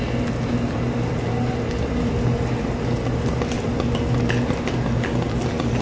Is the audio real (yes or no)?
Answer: yes